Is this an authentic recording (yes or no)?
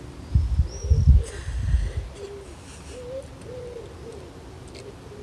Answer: yes